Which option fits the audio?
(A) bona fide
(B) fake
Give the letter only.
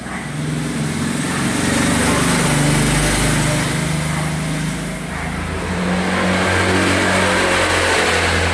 A